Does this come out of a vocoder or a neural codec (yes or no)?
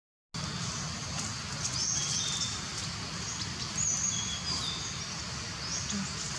no